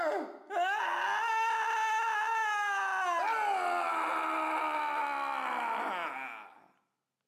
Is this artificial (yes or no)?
no